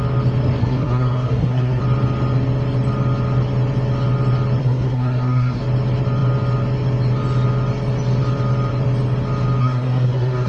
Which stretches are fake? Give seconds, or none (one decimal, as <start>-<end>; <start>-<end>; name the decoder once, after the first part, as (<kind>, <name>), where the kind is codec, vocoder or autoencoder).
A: 0.6-1.8 (codec, SNAC); 4.6-5.6; 9.6-10.5